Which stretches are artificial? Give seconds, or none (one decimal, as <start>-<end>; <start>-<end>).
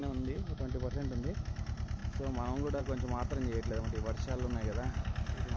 0.0-1.6; 2.0-2.8